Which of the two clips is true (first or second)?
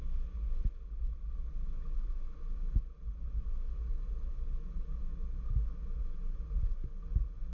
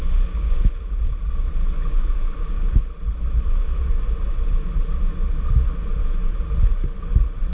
first